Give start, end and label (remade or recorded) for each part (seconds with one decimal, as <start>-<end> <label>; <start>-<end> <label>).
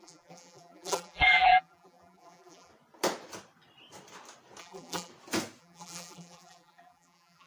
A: 0.0-2.7 remade; 2.7-4.6 recorded; 4.6-5.1 remade; 5.1-5.6 recorded; 5.6-7.5 remade